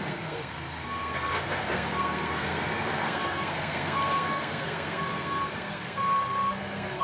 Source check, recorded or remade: remade